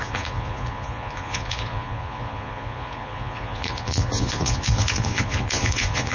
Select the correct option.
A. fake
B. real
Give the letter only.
A